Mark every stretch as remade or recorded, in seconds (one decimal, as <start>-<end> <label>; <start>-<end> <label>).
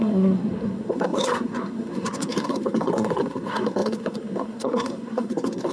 0.0-5.7 remade